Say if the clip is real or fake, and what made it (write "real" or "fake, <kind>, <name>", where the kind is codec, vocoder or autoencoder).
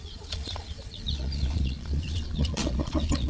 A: fake, vocoder, Vocos